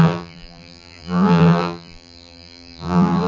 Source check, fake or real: fake